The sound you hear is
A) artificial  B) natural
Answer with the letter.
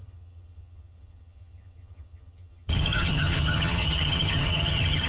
A